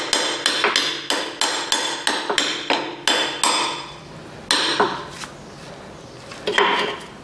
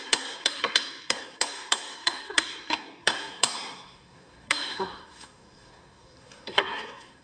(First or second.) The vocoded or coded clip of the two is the second